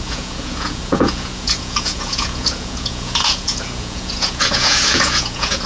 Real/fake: fake